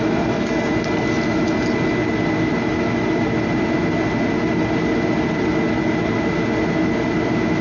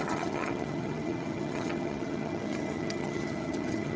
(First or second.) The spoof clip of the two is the second